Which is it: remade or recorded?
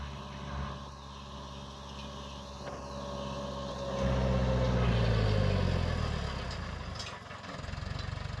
recorded